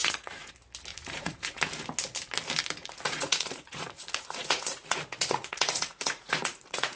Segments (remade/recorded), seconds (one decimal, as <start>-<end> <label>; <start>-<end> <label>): 0.0-0.5 remade; 0.5-0.9 recorded; 0.9-1.6 remade; 1.6-2.8 recorded; 2.8-7.0 remade